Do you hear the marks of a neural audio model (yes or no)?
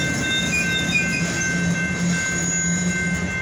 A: no